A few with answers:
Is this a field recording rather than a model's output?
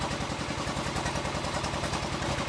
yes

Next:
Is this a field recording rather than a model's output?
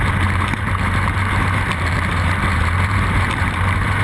no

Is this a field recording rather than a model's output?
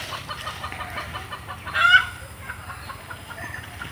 no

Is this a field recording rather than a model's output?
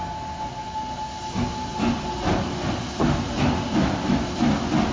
yes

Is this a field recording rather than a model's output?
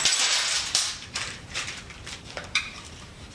no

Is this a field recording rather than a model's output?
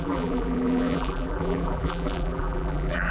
no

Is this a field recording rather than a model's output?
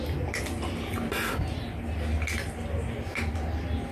yes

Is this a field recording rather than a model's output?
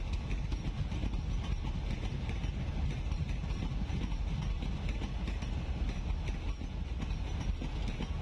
yes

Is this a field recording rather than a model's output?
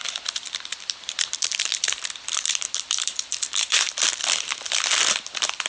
no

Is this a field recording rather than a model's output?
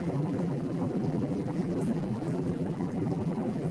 no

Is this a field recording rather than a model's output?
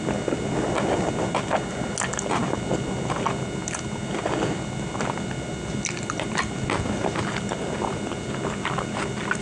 yes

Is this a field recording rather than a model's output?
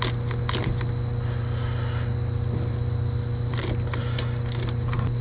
yes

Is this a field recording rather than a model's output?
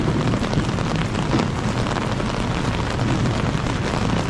yes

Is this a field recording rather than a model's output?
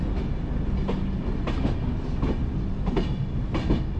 yes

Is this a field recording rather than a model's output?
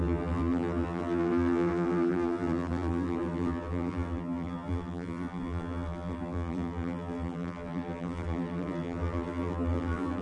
no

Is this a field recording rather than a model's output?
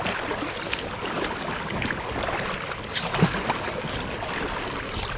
yes